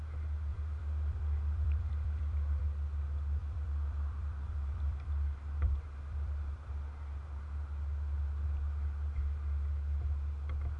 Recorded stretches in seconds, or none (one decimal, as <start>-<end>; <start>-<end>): 0.0-0.5; 2.6-3.4; 6.7-10.8